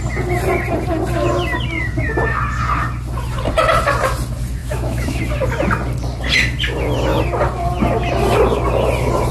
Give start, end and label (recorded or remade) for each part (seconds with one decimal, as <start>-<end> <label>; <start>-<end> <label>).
0.0-4.6 recorded; 4.6-5.2 remade; 5.2-9.3 recorded